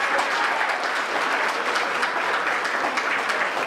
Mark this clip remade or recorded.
recorded